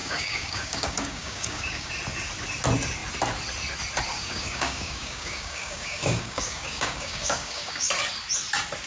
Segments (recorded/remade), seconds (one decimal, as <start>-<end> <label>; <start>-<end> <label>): 0.0-1.9 remade; 1.9-4.1 recorded; 4.1-7.9 remade; 7.9-8.9 recorded